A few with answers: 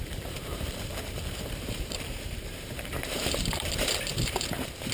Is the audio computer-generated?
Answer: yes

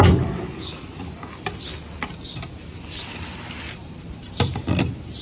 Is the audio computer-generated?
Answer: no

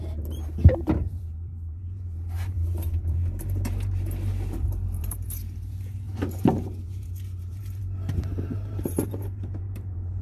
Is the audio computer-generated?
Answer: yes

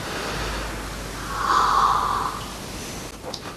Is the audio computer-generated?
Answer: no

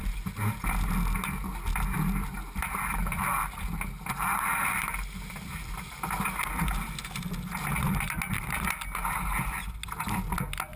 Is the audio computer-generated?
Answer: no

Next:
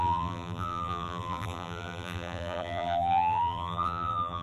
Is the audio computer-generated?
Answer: yes